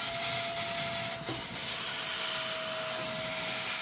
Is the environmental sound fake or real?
real